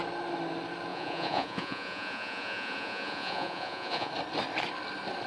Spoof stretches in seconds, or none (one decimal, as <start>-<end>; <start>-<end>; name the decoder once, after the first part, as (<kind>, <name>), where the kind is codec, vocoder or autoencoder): 0.9-4.1 (vocoder, Vocos)